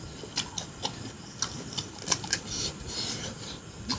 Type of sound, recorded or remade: recorded